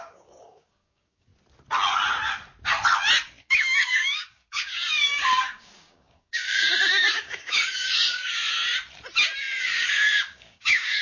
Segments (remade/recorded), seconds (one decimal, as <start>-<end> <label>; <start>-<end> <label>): 0.0-1.3 remade; 1.3-3.4 recorded; 3.4-8.4 remade; 8.4-9.6 recorded; 9.6-11.0 remade